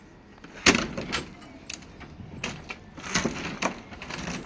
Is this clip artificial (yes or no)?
no